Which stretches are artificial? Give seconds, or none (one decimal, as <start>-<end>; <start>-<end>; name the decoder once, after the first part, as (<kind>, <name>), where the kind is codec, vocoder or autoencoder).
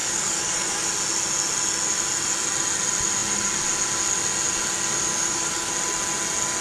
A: 0.0-0.9 (codec, DAC); 5.1-5.7